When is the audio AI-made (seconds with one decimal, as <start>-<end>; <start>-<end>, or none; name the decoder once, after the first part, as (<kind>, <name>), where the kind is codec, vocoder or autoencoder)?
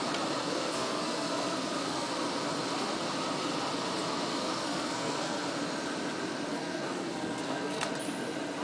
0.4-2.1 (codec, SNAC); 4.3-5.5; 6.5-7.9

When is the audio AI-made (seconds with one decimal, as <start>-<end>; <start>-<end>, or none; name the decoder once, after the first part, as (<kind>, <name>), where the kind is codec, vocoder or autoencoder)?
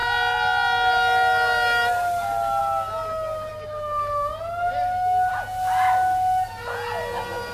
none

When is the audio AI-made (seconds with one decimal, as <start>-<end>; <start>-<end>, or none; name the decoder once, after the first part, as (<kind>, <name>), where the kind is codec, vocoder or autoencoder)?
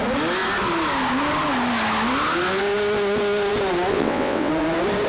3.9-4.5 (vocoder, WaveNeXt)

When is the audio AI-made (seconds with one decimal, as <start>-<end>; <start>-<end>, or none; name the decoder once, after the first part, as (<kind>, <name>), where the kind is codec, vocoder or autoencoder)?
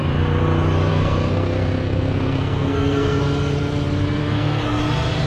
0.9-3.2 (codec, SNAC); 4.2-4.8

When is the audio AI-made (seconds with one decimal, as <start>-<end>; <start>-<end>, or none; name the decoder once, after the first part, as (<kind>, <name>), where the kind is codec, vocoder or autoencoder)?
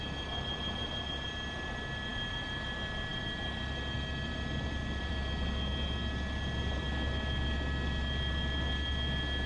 2.1-2.7 (vocoder, BigVGAN v2); 3.1-5.1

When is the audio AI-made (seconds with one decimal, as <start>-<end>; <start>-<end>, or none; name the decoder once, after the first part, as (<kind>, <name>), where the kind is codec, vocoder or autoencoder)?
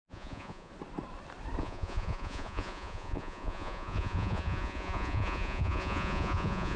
0.0-0.7 (vocoder, Vocos); 1.6-6.8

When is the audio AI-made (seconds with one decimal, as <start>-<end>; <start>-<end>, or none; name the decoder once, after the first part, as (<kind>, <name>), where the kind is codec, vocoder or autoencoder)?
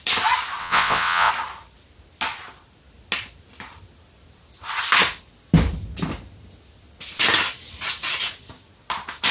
0.6-1.3 (vocoder, WaveNeXt)